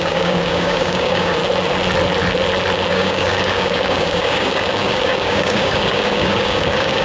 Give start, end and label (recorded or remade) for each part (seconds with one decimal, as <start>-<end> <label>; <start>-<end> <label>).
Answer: 0.0-1.4 remade; 1.4-2.9 recorded; 2.9-7.0 remade